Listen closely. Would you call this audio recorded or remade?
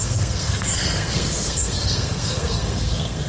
remade